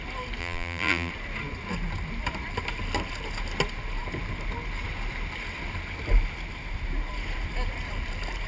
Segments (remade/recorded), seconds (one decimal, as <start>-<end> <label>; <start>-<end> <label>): 0.0-0.4 recorded; 0.4-1.1 remade; 1.1-8.5 recorded